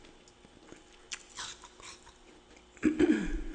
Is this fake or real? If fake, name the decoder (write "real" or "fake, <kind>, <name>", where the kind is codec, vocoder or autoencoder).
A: real